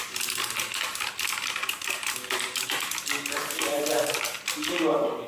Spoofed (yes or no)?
no